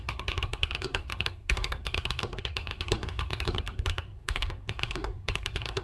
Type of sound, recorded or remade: remade